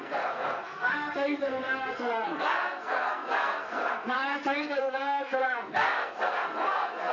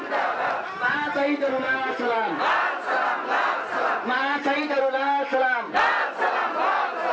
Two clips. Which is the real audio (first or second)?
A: second